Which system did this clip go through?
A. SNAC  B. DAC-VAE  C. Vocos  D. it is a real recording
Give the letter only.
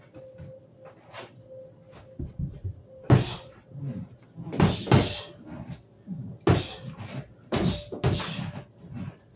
D